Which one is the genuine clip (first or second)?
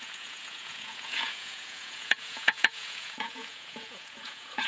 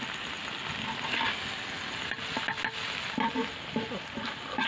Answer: second